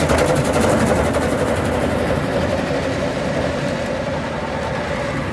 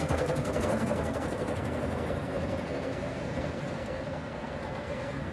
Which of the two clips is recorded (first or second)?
first